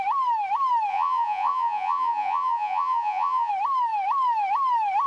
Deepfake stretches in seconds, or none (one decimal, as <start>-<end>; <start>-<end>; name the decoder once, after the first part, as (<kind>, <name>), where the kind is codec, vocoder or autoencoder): 0.9-3.5 (vocoder, Vocos)